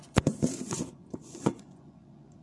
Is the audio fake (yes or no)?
yes